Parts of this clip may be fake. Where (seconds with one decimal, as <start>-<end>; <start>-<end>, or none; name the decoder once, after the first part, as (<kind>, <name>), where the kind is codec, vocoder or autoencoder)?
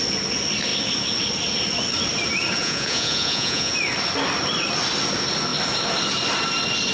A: 2.6-3.7 (vocoder, Vocos)